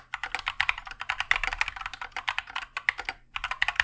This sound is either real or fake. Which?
real